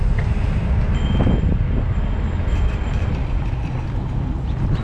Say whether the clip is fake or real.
fake